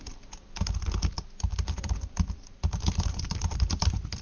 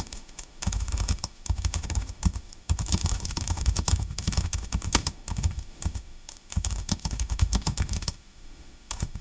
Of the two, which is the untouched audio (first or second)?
first